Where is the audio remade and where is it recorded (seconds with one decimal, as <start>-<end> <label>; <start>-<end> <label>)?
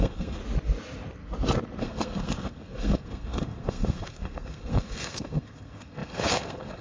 0.0-0.4 remade; 0.4-1.8 recorded; 1.8-6.8 remade